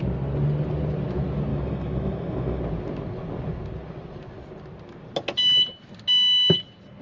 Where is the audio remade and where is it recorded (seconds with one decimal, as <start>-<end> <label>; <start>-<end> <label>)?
0.0-1.5 recorded; 1.5-2.6 remade; 2.6-7.0 recorded